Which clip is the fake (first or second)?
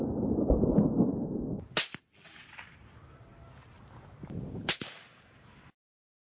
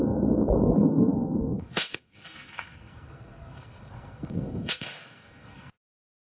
second